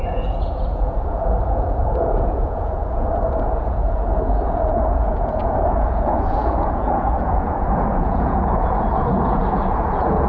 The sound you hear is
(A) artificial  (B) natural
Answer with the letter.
A